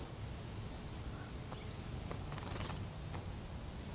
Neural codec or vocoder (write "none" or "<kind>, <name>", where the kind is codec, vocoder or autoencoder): none